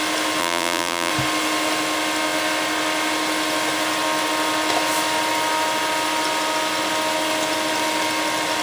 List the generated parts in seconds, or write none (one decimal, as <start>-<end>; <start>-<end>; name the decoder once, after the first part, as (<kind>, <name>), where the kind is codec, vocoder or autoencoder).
0.4-1.1 (vocoder, BigVGAN v2)